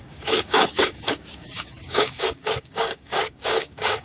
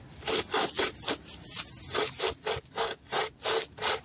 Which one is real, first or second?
second